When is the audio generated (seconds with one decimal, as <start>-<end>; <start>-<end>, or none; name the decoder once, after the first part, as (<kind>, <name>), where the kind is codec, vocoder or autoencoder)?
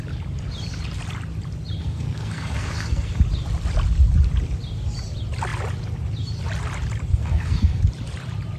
1.8-3.2 (codec, SNAC); 7.1-7.8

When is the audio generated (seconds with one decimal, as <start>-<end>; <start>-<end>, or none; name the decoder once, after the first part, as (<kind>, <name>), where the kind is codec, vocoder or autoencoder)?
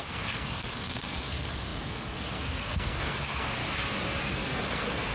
0.0-3.6 (codec, SNAC); 4.2-5.1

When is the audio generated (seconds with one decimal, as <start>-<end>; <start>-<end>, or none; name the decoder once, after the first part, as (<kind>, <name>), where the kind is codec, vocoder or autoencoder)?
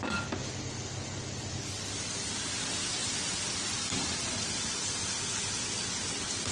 none